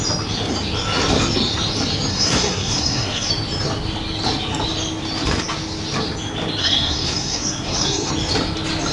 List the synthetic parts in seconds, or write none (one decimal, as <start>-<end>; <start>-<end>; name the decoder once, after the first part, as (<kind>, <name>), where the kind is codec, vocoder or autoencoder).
2.1-3.3 (codec, SNAC); 6.6-8.1